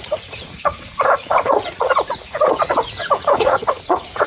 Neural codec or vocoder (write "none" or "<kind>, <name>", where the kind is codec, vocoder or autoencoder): vocoder, Vocos